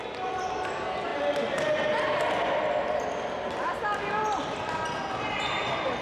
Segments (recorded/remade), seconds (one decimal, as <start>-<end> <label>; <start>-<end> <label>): 0.0-6.0 recorded